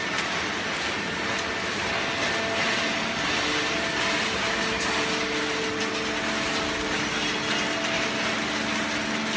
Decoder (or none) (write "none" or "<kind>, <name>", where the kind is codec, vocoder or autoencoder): none